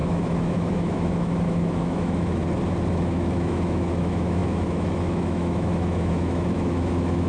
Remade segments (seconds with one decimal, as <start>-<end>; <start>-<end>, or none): 0.0-2.4; 2.9-7.3